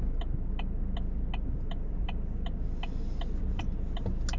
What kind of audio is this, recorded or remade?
recorded